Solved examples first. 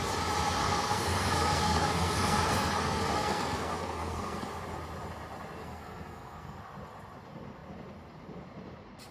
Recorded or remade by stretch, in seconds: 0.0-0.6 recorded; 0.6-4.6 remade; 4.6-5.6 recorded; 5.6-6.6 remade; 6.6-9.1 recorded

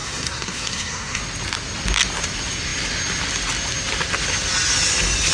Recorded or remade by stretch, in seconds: 0.0-1.2 remade; 1.2-5.3 recorded

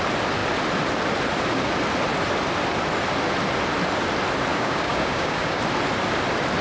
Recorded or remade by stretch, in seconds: 0.0-4.5 recorded; 4.5-5.6 remade; 5.6-6.6 recorded

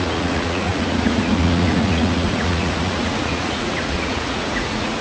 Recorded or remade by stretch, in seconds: 0.0-5.0 remade